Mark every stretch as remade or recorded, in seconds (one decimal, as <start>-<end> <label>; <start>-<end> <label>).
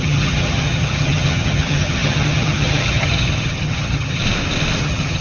0.0-4.2 remade; 4.2-4.8 recorded; 4.8-5.2 remade